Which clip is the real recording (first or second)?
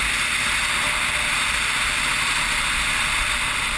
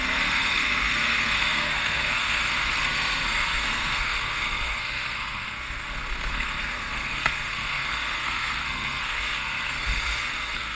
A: first